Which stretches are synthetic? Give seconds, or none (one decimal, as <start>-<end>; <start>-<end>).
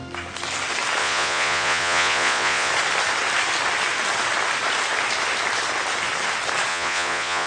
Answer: 1.0-2.7; 6.7-7.5